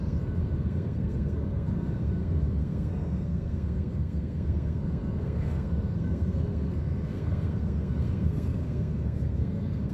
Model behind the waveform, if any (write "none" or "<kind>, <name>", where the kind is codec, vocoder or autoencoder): codec, SNAC